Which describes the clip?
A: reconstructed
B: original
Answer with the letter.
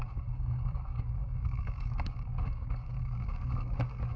A